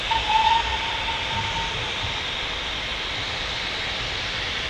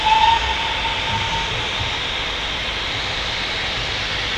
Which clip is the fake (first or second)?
first